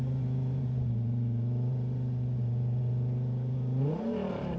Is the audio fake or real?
fake